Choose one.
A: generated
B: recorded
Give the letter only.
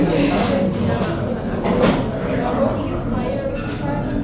B